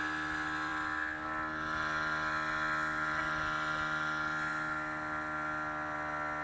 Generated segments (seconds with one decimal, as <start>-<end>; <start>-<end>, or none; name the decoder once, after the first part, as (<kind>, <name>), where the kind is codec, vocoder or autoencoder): none